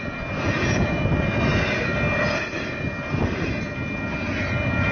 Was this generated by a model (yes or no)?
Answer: no